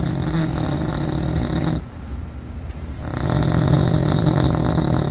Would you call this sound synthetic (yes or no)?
no